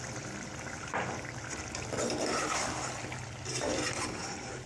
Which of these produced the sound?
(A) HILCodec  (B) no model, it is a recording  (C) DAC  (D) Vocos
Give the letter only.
B